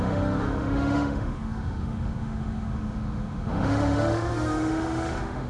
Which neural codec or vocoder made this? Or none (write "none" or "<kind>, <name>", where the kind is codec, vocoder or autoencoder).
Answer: autoencoder, DAC-VAE